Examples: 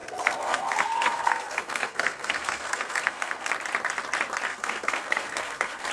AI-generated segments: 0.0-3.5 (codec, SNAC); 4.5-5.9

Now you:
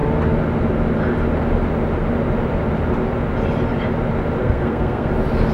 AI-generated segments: 4.4-5.1 (codec, SNAC)

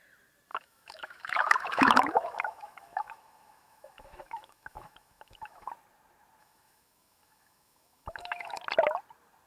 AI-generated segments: 0.5-5.7 (autoencoder, DAC-VAE); 6.4-8.6

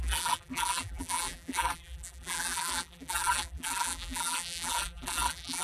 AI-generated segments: 0.0-5.6 (vocoder, BigVGAN v2)